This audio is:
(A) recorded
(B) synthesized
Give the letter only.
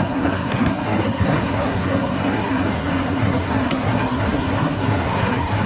B